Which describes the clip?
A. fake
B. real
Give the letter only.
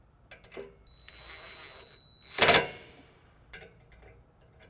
B